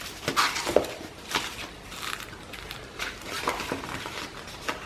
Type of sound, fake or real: fake